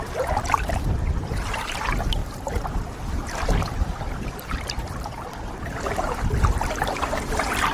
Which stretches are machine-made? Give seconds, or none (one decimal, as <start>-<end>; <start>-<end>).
none